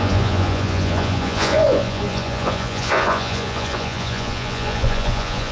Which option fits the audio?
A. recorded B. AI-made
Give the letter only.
B